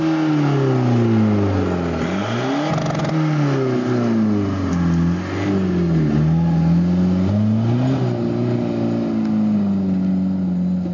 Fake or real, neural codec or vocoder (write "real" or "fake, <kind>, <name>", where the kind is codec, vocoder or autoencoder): real